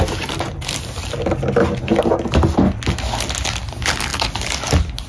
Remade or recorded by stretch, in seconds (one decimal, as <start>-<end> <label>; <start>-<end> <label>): 0.0-5.1 recorded